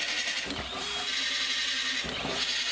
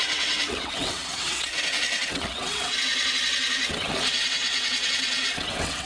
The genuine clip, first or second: first